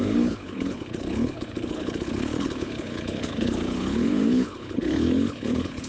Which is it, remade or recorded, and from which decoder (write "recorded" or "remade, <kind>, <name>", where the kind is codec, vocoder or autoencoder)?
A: remade, codec, HILCodec